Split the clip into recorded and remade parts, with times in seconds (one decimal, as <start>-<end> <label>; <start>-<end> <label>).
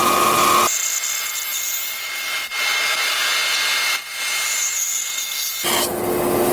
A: 0.0-6.5 recorded